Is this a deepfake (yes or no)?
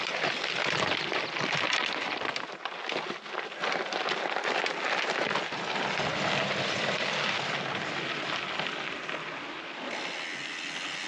no